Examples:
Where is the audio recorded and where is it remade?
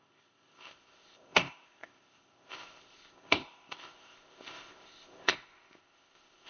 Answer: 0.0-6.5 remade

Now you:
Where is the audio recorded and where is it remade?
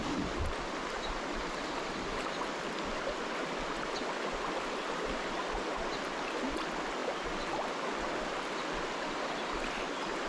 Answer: 0.0-10.3 recorded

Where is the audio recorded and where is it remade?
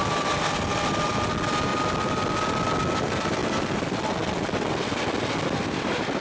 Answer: 0.0-6.2 recorded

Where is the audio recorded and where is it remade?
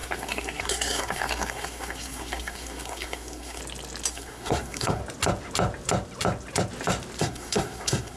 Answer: 0.0-3.6 remade; 3.6-4.1 recorded; 4.1-5.0 remade; 5.0-7.2 recorded; 7.2-8.2 remade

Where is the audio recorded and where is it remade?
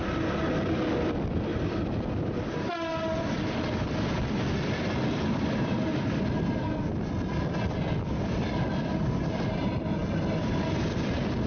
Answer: 0.0-11.5 recorded